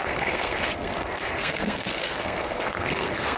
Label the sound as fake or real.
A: fake